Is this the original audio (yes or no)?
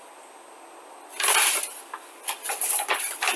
yes